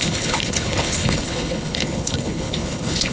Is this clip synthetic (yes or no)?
yes